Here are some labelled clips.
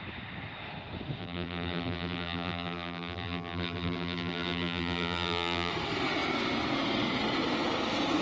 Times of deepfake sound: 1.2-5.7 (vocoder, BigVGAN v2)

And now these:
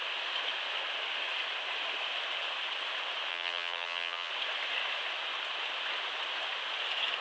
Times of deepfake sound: 3.3-4.3 (vocoder, HiFi-GAN)

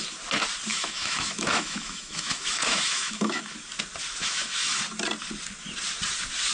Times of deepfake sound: 0.7-3.4 (autoencoder, DAC-VAE); 4.2-4.8

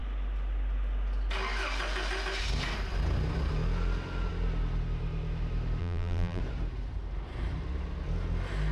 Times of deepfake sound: 5.8-6.4 (vocoder, BigVGAN v2)